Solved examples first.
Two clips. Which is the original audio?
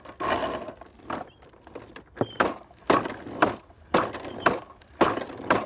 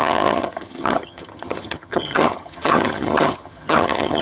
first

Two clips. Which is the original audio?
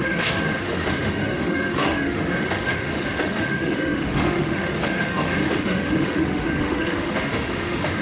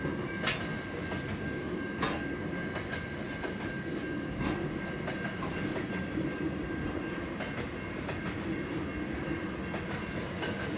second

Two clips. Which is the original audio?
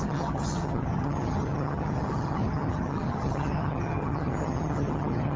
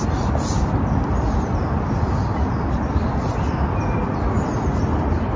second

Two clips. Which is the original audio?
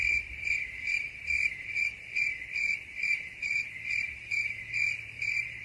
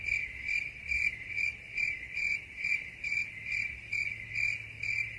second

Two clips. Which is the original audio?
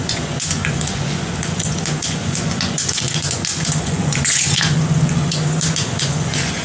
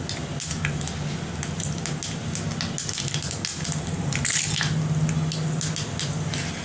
second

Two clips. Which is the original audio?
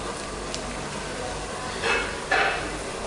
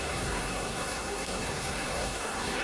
first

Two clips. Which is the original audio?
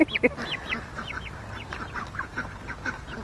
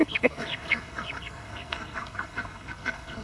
first